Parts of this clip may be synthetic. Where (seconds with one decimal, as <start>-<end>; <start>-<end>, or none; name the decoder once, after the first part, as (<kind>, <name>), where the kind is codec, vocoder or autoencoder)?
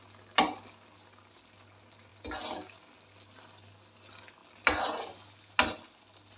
none